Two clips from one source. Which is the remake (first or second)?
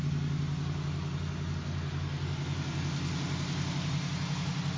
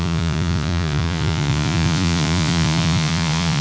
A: second